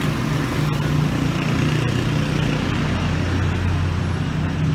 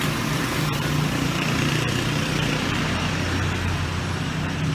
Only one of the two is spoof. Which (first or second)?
second